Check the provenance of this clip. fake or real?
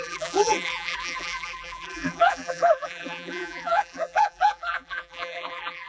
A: fake